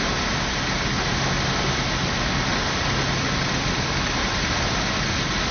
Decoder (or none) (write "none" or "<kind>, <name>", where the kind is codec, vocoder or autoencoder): none